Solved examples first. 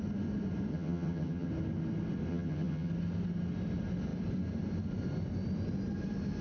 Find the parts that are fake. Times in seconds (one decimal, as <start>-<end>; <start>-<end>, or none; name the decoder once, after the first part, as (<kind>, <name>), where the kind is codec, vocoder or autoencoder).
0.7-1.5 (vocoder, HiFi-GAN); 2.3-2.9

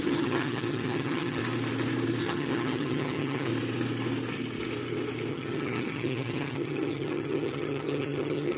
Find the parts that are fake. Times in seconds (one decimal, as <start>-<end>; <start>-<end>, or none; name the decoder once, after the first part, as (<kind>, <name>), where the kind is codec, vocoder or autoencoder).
0.0-1.4 (vocoder, HiFi-GAN); 2.2-3.5; 5.3-8.6

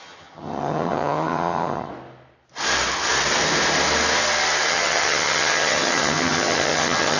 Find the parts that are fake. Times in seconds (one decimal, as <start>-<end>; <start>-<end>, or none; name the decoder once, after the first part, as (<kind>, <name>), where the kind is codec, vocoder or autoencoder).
0.0-1.9 (vocoder, HiFi-GAN); 4.7-7.2

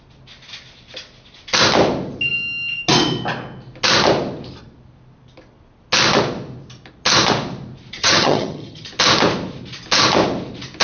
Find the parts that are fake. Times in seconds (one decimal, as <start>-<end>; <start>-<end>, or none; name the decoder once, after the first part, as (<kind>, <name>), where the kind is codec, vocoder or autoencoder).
8.0-8.9 (vocoder, HiFi-GAN)

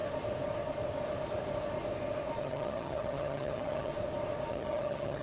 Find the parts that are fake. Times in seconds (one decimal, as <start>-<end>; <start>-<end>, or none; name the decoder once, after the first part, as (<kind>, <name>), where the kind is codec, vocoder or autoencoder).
2.4-3.9 (vocoder, HiFi-GAN); 4.5-5.2

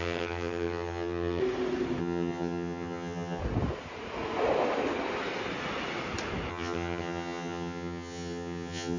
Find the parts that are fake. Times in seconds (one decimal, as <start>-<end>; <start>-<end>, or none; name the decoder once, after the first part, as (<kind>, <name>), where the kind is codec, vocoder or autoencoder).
0.0-1.4 (vocoder, HiFi-GAN); 2.0-3.4; 6.5-9.0

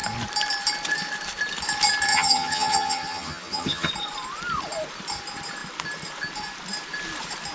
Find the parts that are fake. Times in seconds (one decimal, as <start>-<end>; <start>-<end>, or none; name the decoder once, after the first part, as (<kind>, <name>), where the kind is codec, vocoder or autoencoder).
2.1-3.9 (vocoder, HiFi-GAN)